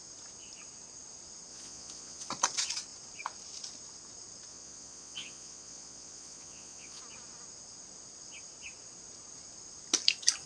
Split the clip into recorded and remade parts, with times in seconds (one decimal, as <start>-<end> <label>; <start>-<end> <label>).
0.0-1.5 recorded; 1.5-2.3 remade; 2.3-4.5 recorded; 4.5-7.0 remade; 7.0-10.5 recorded